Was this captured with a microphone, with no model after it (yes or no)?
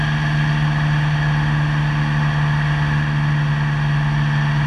yes